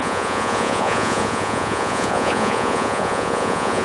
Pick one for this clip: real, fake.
fake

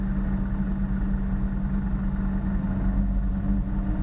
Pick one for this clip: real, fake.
real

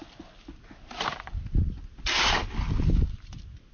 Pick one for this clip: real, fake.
real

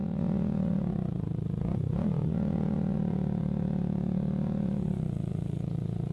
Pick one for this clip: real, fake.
fake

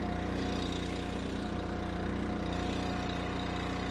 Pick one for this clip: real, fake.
real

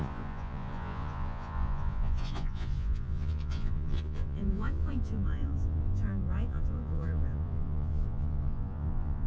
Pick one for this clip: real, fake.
fake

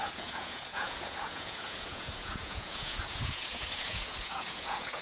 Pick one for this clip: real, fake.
fake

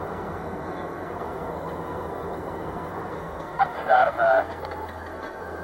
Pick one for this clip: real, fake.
fake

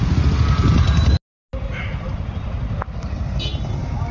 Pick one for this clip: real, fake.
real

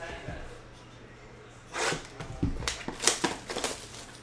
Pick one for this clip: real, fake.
real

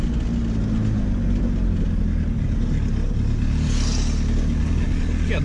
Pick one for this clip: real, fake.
real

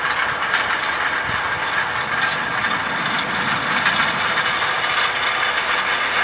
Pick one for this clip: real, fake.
real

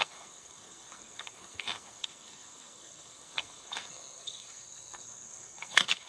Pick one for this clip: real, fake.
fake